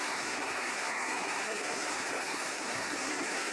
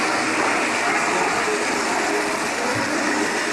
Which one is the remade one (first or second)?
first